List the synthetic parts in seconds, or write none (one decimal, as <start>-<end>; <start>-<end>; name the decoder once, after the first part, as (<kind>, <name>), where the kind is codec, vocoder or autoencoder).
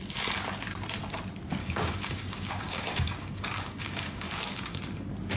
1.6-4.8 (codec, DAC)